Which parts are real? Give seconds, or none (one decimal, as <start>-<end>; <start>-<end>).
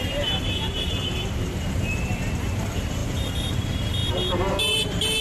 4.0-4.7